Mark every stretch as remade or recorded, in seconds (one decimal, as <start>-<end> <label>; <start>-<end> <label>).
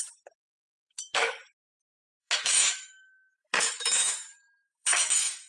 0.0-0.5 recorded; 0.5-1.8 remade; 1.8-2.2 recorded; 2.2-5.5 remade